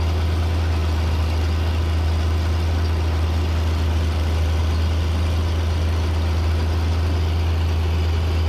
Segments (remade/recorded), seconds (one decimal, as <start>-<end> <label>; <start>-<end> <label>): 0.0-8.5 recorded

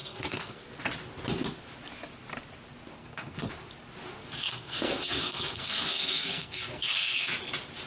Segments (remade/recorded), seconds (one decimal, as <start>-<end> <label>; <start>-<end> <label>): 0.0-0.7 remade; 0.7-3.0 recorded; 3.0-3.5 remade; 3.5-4.2 recorded; 4.2-7.3 remade; 7.3-7.9 recorded

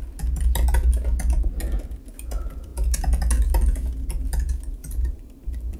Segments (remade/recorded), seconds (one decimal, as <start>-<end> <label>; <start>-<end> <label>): 0.0-4.8 recorded; 4.8-5.8 remade

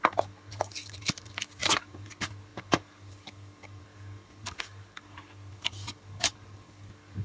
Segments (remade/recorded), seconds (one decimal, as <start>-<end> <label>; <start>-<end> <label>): 0.0-7.2 remade

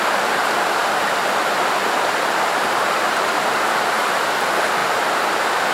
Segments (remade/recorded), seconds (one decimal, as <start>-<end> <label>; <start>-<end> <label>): 0.0-4.8 recorded; 4.8-5.7 remade

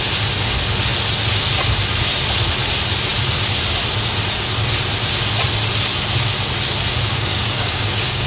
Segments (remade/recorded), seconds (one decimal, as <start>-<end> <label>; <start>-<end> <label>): 0.0-7.1 recorded; 7.1-8.3 remade

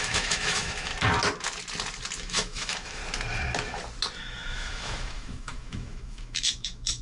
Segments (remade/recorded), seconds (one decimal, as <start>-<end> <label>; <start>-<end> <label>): 0.0-0.9 remade; 0.9-2.2 recorded; 2.2-3.0 remade; 3.0-4.2 recorded; 4.2-7.0 remade

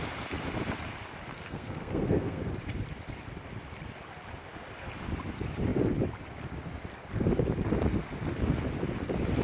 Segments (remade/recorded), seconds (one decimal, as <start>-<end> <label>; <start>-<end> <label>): 0.0-1.3 recorded; 1.3-2.5 remade; 2.5-9.4 recorded